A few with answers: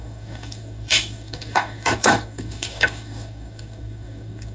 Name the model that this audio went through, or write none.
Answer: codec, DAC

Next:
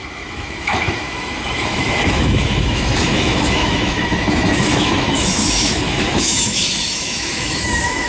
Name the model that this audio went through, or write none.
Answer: autoencoder, DAC-VAE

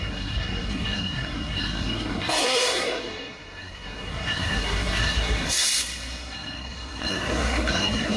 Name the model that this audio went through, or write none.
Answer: codec, SNAC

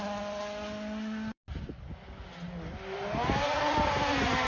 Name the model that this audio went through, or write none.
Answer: none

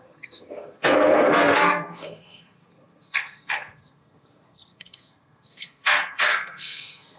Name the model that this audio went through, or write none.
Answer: codec, SNAC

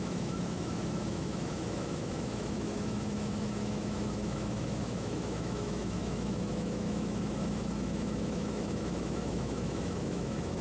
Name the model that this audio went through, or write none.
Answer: autoencoder, DAC-VAE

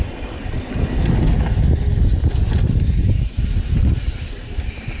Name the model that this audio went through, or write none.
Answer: none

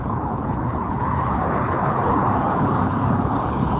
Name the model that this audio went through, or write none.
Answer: codec, HILCodec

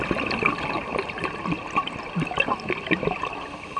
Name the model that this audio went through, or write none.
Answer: vocoder, BigVGAN v2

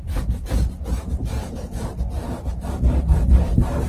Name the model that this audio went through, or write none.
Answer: vocoder, BigVGAN v2